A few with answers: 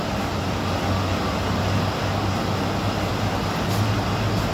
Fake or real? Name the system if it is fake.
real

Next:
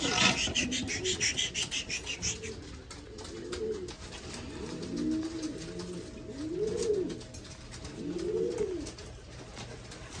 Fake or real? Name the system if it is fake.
real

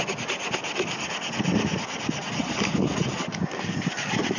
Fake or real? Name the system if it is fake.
real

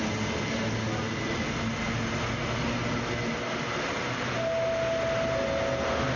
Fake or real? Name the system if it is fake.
real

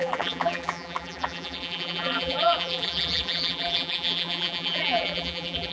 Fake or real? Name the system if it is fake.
fake, vocoder, BigVGAN v2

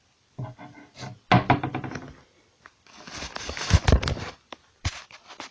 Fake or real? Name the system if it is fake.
real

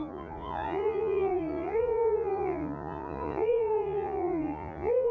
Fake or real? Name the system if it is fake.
fake, vocoder, Vocos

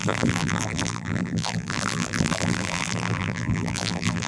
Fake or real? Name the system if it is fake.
fake, vocoder, BigVGAN v2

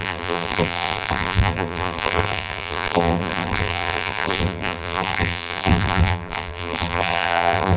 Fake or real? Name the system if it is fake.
fake, vocoder, BigVGAN v2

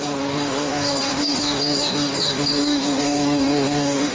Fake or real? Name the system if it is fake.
fake, codec, DAC